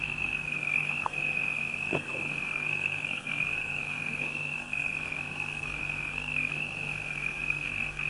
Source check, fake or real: fake